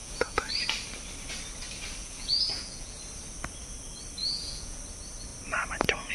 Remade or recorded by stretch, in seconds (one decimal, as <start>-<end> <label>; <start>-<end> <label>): 0.0-0.5 remade; 0.5-2.0 recorded; 2.0-3.0 remade; 3.0-4.2 recorded; 4.2-4.8 remade; 4.8-6.1 recorded